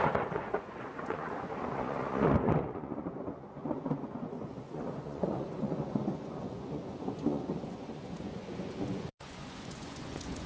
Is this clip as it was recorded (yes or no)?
no